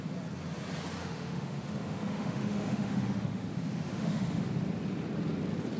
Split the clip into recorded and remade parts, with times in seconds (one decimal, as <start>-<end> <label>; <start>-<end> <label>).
0.0-1.0 recorded; 1.0-4.5 remade; 4.5-5.8 recorded